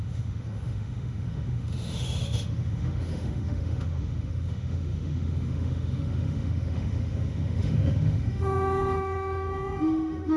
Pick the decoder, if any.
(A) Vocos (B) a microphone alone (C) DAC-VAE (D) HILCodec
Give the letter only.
C